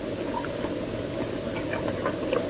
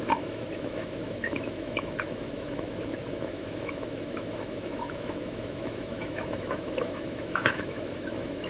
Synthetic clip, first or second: second